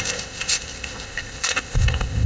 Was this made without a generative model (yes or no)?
no